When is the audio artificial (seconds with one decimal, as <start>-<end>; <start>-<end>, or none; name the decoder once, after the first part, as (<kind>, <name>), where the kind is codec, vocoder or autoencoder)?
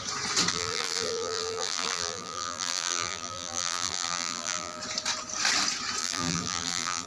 0.5-4.8 (vocoder, BigVGAN v2); 6.0-7.1